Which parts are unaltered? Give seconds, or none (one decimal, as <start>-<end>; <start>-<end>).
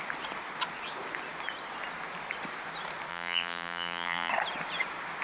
0.0-3.1; 4.3-5.2